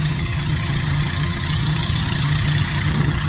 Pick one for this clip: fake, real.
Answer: fake